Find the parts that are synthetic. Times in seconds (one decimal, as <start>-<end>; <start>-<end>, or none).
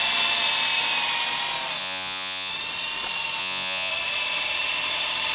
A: 1.8-2.5; 3.4-3.9